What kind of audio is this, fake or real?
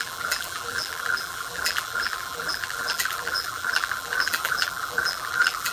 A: fake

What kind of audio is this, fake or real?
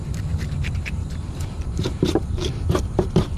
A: fake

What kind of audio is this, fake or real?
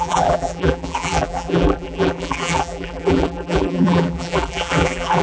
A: fake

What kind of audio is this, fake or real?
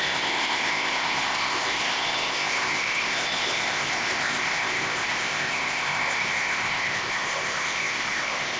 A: fake